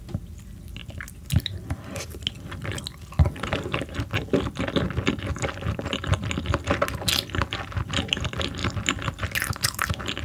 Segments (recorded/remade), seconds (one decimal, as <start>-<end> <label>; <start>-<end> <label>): 0.0-10.2 recorded